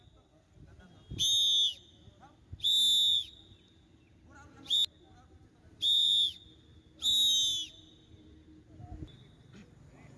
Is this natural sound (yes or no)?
yes